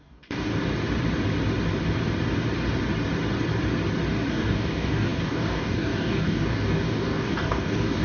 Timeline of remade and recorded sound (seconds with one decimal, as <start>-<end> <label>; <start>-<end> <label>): 0.0-0.5 remade; 0.5-4.3 recorded; 4.3-8.0 remade